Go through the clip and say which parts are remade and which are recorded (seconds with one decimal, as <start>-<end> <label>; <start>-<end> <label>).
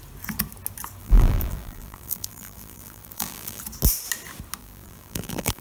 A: 0.0-1.0 recorded; 1.0-3.6 remade; 3.6-4.6 recorded; 4.6-5.6 remade